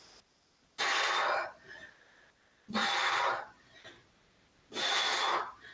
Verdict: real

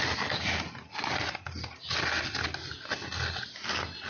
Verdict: real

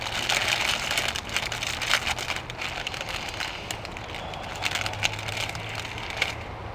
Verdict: real